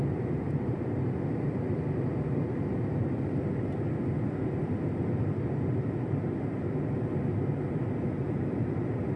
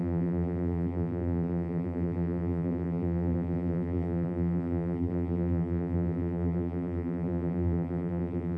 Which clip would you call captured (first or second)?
first